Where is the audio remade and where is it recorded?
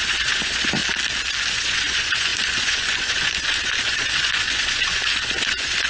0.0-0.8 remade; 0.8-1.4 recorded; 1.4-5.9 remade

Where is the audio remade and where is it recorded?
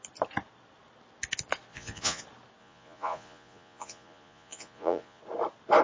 0.0-1.7 recorded; 1.7-2.2 remade; 2.2-2.6 recorded; 2.6-5.2 remade; 5.2-5.8 recorded